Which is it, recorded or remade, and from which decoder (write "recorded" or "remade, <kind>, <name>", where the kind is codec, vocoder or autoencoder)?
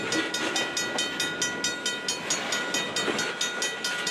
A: recorded